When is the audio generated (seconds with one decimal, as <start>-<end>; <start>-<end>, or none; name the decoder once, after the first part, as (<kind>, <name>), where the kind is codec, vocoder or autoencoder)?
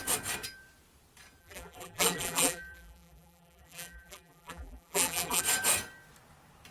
1.4-5.4 (vocoder, BigVGAN v2)